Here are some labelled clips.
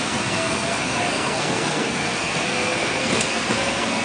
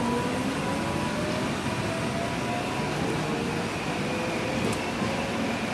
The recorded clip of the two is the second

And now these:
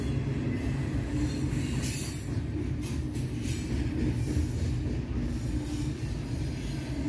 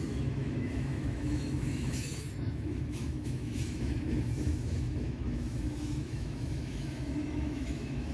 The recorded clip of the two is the first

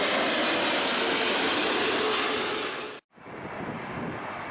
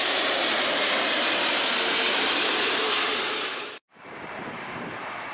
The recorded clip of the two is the first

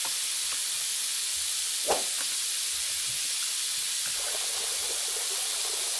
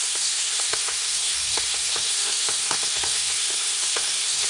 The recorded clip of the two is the first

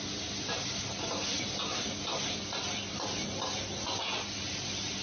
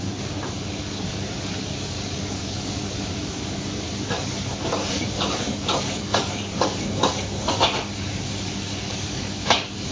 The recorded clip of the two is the first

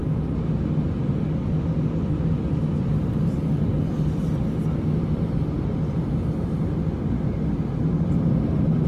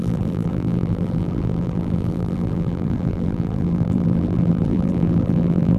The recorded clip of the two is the first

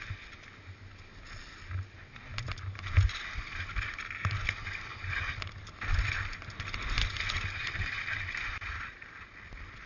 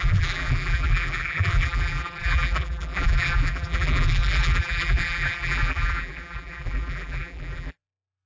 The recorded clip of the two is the first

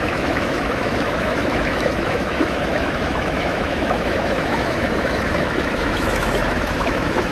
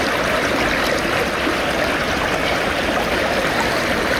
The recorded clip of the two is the second